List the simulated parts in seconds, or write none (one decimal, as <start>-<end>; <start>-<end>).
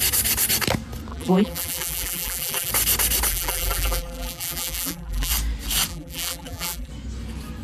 1.1-2.7; 3.3-5.3; 5.9-6.9